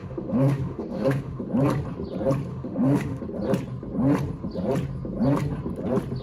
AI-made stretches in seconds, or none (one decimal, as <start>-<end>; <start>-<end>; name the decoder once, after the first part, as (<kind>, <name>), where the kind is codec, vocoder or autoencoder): 0.0-1.4 (autoencoder, DAC-VAE); 2.5-3.2